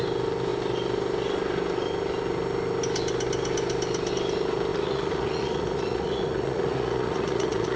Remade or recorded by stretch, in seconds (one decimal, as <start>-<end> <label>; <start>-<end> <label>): 0.0-4.7 recorded; 4.7-7.8 remade